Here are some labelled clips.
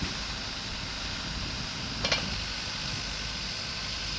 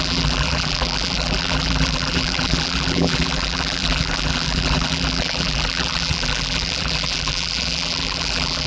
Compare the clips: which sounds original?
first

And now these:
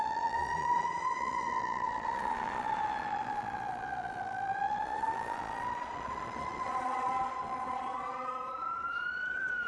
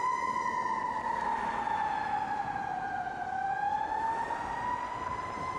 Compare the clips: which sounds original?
second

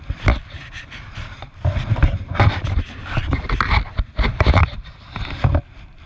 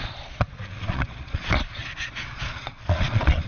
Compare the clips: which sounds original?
first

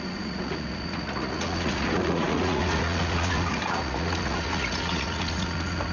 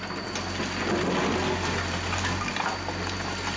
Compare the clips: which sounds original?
second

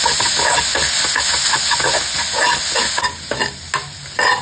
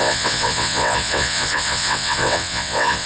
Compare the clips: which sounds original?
first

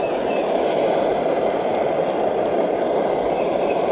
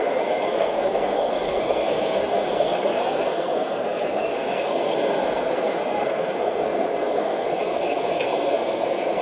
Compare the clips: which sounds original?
first